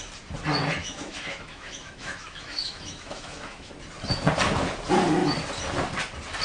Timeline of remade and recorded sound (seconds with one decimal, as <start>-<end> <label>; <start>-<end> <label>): 0.0-0.8 recorded; 0.8-3.7 remade; 3.7-6.4 recorded